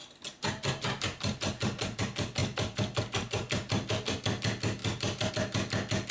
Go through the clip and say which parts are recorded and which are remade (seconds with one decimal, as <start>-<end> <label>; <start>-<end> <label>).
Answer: 0.0-2.0 remade; 2.0-2.4 recorded; 2.4-3.0 remade; 3.0-6.1 recorded